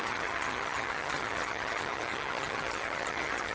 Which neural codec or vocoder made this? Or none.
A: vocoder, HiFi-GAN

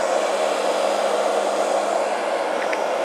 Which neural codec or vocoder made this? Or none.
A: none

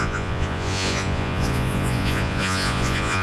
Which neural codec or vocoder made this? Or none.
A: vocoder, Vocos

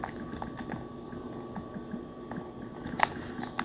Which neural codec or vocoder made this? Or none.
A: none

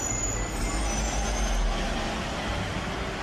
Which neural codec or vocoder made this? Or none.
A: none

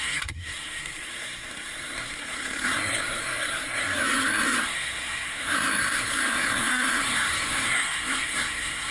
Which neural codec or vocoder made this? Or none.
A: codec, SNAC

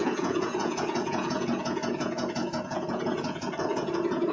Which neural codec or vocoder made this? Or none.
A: vocoder, Vocos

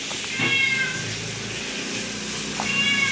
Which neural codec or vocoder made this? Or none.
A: none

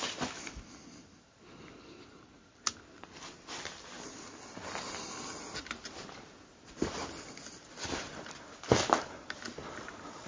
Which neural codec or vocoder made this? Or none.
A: none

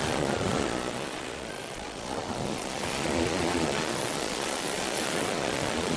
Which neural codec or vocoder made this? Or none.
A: vocoder, Vocos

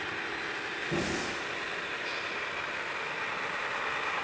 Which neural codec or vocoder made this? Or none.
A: none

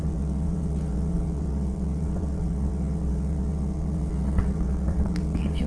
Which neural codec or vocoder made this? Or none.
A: vocoder, WaveNeXt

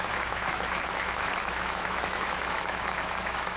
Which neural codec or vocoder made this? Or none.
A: autoencoder, DAC-VAE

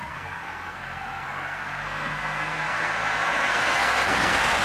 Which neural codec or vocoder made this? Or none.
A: codec, SNAC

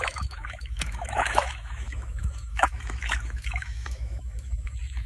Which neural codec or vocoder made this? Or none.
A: autoencoder, DAC-VAE